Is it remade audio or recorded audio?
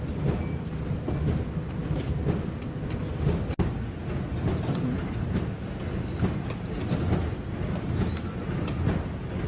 recorded